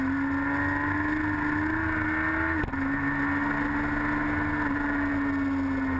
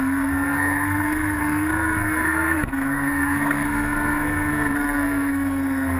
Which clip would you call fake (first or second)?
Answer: second